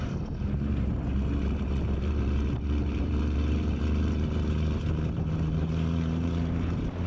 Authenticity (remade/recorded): remade